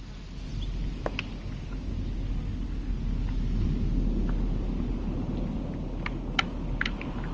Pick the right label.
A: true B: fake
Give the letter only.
A